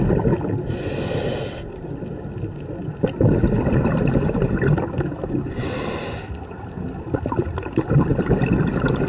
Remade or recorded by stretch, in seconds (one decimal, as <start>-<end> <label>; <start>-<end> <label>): 0.0-9.1 recorded